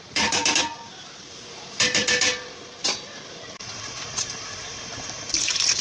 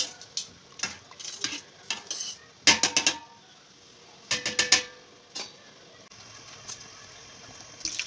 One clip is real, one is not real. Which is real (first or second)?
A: second